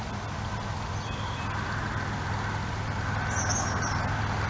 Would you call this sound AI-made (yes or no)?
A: no